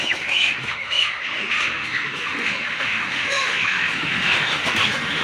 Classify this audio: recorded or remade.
remade